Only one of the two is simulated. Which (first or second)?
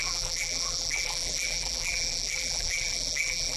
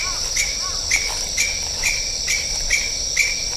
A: first